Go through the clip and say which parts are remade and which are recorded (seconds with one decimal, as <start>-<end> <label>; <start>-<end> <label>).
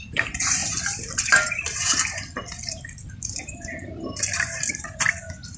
0.0-0.6 remade; 0.6-2.7 recorded; 2.7-3.8 remade; 3.8-5.6 recorded